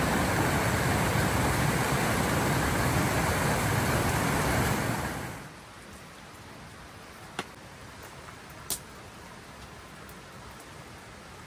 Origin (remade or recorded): recorded